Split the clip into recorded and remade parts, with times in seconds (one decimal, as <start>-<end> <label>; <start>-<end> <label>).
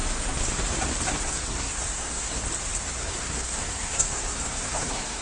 0.0-1.2 recorded; 1.2-2.4 remade; 2.4-3.0 recorded; 3.0-5.2 remade